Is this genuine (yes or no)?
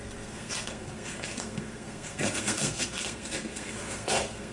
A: no